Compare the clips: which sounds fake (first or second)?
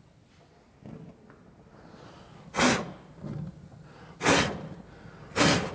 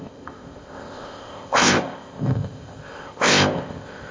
second